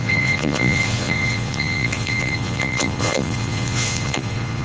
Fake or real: fake